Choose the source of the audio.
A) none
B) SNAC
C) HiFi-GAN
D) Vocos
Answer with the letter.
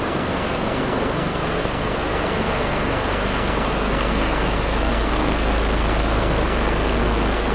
B